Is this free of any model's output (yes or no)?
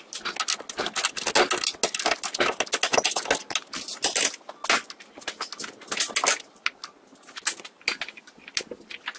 yes